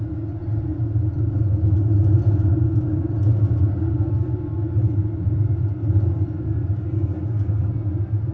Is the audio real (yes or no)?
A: yes